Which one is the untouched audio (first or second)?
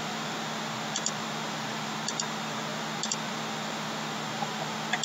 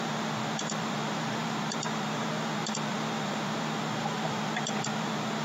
first